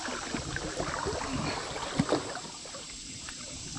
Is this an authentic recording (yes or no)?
yes